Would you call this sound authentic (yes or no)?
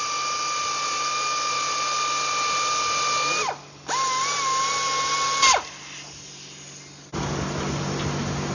yes